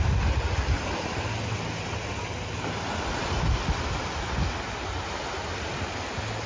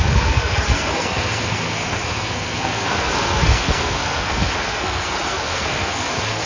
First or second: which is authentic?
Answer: first